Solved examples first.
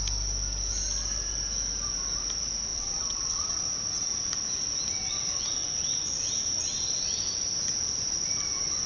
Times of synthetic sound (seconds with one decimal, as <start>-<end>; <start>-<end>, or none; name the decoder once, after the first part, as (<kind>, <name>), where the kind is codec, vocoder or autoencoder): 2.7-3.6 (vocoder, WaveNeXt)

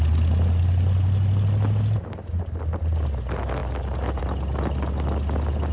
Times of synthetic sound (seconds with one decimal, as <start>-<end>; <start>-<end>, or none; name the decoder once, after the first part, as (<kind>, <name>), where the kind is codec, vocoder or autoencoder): none

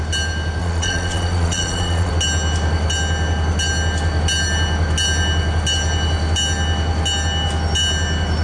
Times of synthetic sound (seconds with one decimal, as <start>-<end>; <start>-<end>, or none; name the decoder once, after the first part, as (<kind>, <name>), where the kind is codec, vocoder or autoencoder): 0.6-2.1 (vocoder, Vocos)

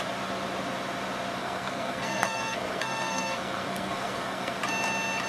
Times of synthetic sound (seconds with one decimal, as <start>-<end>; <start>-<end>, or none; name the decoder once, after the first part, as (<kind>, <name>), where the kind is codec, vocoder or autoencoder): 1.4-4.6 (codec, SNAC)